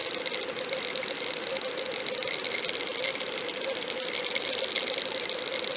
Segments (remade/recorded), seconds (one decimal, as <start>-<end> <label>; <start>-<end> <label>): 0.0-5.8 recorded